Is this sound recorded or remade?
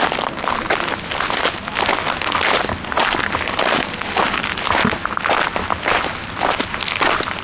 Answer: recorded